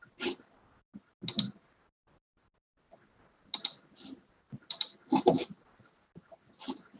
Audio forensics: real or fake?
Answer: real